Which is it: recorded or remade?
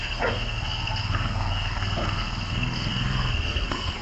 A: remade